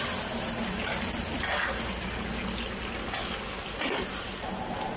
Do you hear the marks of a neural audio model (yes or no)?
no